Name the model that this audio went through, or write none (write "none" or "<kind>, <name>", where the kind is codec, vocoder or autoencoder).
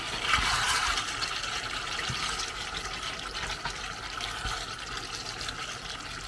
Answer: none